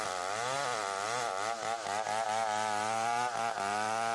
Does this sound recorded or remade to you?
recorded